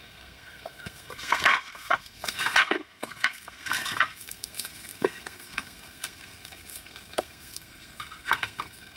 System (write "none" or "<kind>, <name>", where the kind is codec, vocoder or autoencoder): codec, SNAC